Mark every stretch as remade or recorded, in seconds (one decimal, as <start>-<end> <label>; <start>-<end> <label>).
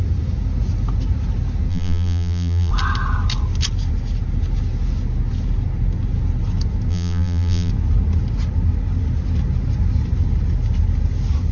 0.0-1.7 recorded; 1.7-2.7 remade; 2.7-6.9 recorded; 6.9-7.7 remade; 7.7-11.5 recorded